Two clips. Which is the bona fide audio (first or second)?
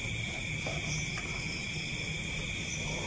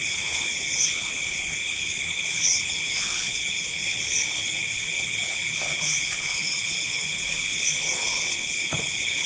first